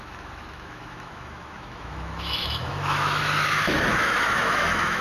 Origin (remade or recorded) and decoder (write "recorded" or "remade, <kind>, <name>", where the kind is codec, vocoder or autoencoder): remade, autoencoder, DAC-VAE